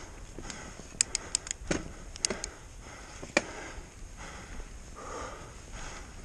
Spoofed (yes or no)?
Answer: no